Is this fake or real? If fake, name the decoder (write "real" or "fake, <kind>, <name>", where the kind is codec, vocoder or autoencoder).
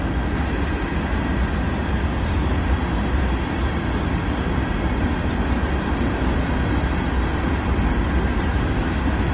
real